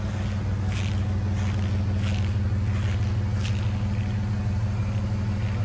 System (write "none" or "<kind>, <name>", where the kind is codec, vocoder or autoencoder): none